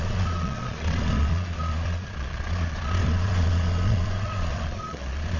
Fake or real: fake